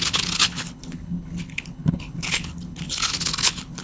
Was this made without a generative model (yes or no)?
no